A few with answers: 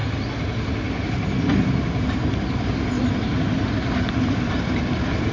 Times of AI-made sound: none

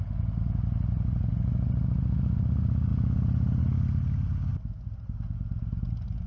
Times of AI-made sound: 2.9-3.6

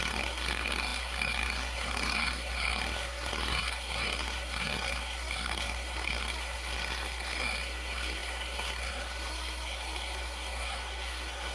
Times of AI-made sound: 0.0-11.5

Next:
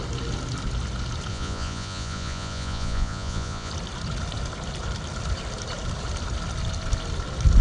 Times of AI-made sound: 1.3-3.7

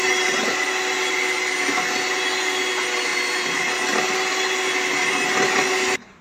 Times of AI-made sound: none

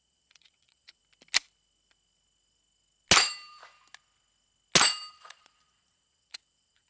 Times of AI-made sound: 0.0-1.0; 5.1-6.9

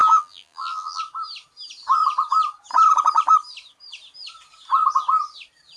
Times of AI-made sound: 0.0-1.0

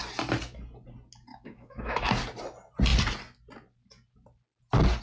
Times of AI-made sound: 1.3-2.1